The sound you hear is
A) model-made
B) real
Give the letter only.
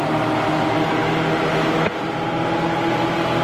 B